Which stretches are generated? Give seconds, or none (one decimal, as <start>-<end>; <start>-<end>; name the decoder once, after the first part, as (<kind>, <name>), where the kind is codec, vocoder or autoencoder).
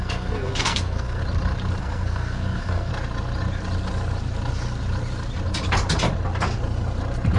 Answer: 0.0-1.2 (codec, SNAC); 1.8-2.9